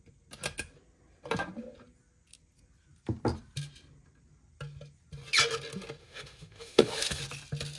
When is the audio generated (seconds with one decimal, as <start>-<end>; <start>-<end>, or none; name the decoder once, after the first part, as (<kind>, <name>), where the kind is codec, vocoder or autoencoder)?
6.0-7.2 (autoencoder, DAC-VAE)